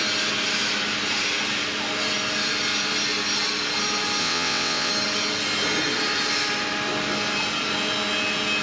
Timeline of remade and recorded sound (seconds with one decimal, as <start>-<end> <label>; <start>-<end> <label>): 0.0-4.2 recorded; 4.2-4.9 remade; 4.9-8.6 recorded